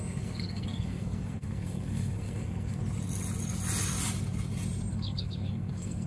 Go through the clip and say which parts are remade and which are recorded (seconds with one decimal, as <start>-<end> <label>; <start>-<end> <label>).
0.0-2.8 remade; 2.8-4.9 recorded; 4.9-6.1 remade